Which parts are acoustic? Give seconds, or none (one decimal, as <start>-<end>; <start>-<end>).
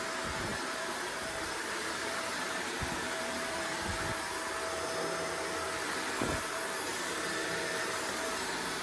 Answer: 0.0-0.5; 3.9-6.9; 7.6-8.8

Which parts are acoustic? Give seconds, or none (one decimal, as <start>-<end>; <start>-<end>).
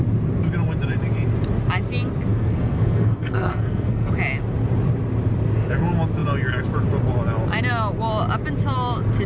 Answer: 0.0-2.3; 4.1-9.3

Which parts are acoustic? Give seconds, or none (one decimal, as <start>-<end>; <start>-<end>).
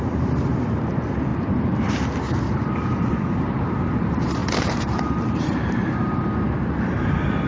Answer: none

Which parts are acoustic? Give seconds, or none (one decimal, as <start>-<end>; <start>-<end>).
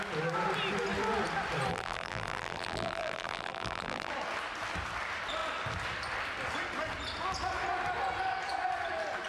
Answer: 0.0-1.7; 4.1-9.3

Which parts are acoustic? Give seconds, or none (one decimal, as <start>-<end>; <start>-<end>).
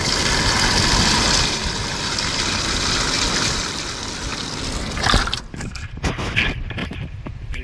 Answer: 0.0-6.8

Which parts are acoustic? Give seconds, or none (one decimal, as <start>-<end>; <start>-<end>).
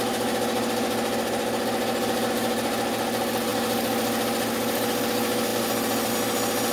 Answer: 0.0-6.7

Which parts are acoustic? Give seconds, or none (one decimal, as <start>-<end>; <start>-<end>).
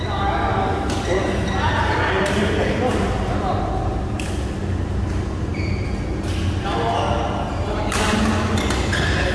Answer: 0.0-9.3